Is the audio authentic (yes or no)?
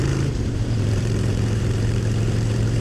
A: no